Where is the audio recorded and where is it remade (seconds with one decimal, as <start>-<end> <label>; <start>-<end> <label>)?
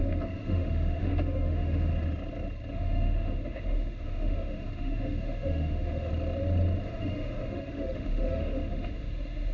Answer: 0.0-1.9 remade; 1.9-2.7 recorded; 2.7-6.1 remade; 6.1-6.8 recorded; 6.8-9.5 remade